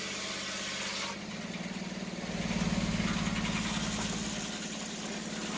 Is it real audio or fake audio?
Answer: real